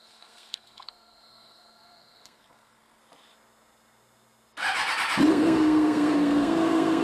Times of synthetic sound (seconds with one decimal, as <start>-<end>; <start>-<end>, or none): 0.0-3.0; 5.3-7.0